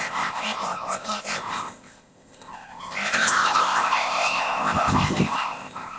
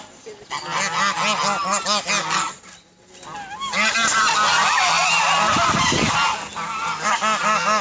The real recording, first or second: second